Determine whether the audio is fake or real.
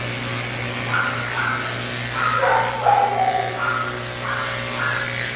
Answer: real